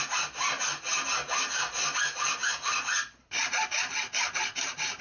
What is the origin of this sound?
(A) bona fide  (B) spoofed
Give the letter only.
A